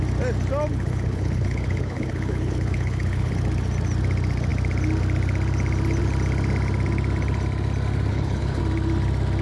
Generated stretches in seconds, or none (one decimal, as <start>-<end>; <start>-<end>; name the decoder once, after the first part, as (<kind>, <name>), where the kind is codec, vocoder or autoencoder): 0.7-3.3 (codec, HILCodec); 8.1-8.6